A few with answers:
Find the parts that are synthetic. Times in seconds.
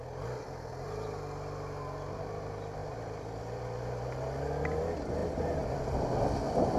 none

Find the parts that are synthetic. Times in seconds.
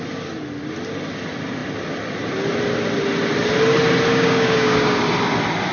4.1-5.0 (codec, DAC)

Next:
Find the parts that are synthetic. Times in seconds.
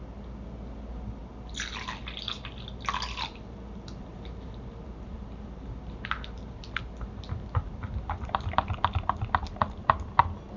none